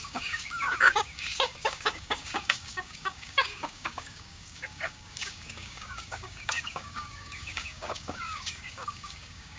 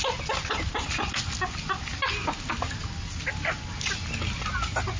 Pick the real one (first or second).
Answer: second